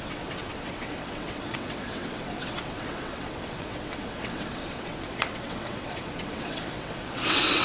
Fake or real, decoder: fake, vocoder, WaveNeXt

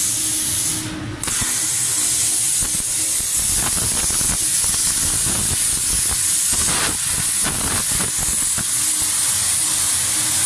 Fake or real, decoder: real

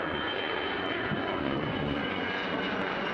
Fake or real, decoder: fake, vocoder, Vocos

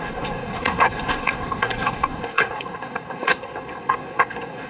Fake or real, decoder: fake, codec, SNAC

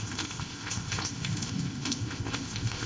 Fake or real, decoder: fake, codec, ZipCodec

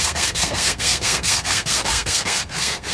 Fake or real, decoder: fake, codec, SNAC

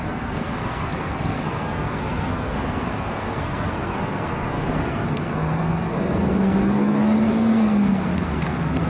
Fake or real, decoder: fake, codec, SNAC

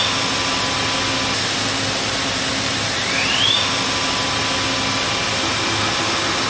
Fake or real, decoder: real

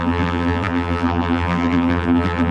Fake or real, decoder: fake, vocoder, BigVGAN v2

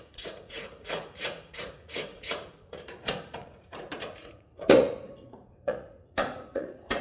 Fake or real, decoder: fake, vocoder, Vocos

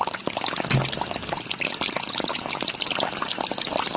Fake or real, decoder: real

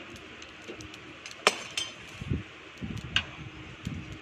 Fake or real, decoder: real